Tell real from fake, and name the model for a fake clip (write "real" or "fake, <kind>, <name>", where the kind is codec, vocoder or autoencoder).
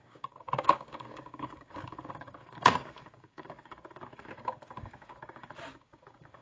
fake, codec, DAC